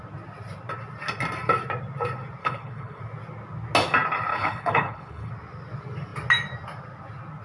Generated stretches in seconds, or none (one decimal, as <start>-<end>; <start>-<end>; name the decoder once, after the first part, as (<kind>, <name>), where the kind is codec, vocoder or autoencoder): 2.4-3.0 (codec, HILCodec); 4.3-5.3